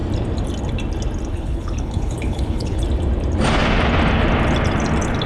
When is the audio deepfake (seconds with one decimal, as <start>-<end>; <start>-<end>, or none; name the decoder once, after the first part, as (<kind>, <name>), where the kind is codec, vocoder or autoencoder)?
1.3-2.8 (codec, HILCodec)